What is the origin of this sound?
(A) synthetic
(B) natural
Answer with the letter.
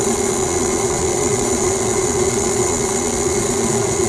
A